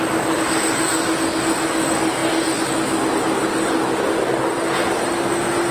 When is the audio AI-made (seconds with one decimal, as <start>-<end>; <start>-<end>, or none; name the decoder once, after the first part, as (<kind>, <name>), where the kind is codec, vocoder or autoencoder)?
none